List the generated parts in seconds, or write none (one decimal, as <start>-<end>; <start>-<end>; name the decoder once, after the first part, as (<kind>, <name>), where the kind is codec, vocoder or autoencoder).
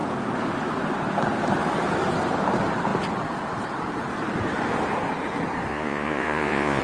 5.7-6.8 (vocoder, Vocos)